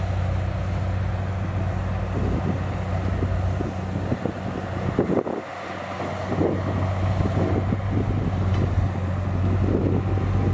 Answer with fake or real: real